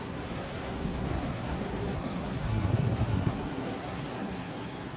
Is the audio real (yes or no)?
no